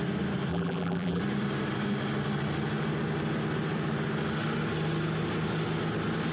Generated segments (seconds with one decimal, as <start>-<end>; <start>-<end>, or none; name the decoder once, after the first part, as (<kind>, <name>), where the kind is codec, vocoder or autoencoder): 0.5-1.2 (vocoder, BigVGAN v2)